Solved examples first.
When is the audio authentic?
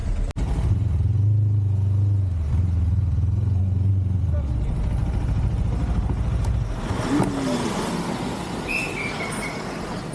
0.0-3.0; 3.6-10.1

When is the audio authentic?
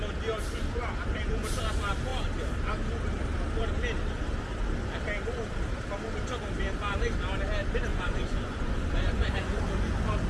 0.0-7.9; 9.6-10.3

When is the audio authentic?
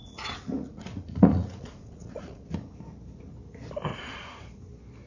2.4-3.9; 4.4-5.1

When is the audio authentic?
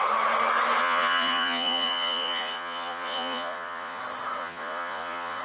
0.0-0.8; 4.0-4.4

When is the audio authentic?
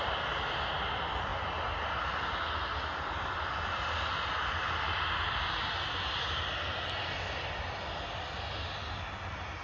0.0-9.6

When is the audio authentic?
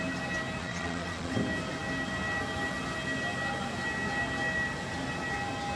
0.0-0.6; 1.3-5.8